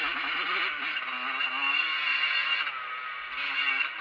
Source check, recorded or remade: recorded